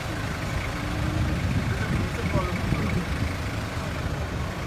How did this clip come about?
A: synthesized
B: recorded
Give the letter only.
B